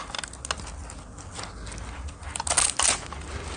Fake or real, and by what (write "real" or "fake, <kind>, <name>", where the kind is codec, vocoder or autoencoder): real